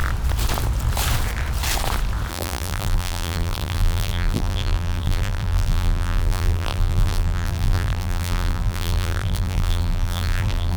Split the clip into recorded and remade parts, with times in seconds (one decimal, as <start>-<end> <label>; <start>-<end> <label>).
0.0-2.3 recorded; 2.3-10.8 remade